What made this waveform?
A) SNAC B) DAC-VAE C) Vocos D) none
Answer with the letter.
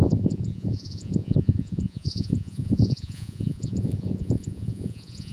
C